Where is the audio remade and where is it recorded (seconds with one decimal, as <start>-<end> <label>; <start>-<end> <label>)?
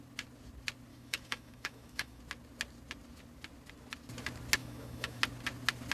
0.0-0.9 recorded; 0.9-2.2 remade; 2.2-4.6 recorded; 4.6-5.2 remade; 5.2-5.9 recorded